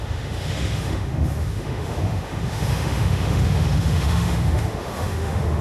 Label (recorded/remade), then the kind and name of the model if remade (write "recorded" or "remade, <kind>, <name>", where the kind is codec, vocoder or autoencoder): remade, autoencoder, DAC-VAE